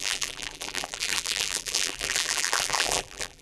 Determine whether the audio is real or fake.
fake